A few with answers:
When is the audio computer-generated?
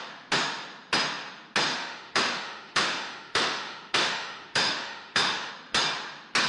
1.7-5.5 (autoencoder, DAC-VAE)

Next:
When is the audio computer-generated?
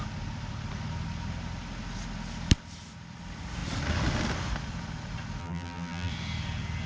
5.4-6.1 (vocoder, BigVGAN v2)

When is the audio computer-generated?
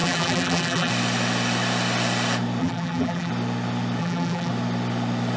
0.0-0.9 (vocoder, BigVGAN v2); 2.6-3.3; 4.0-4.5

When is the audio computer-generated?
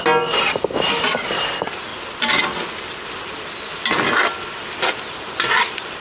none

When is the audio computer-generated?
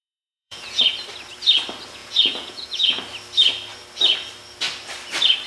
0.0-0.8 (vocoder, Vocos); 2.0-3.0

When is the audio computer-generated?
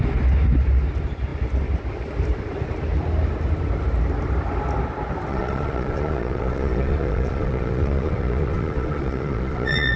5.3-10.0 (vocoder, Vocos)